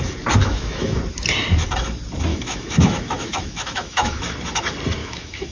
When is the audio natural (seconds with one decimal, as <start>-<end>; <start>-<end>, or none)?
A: 0.0-0.4; 1.0-2.3; 4.2-5.0